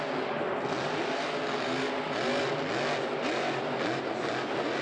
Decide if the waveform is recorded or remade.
recorded